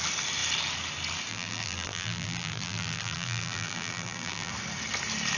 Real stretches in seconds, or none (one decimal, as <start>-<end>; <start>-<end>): 0.0-1.3; 4.5-5.4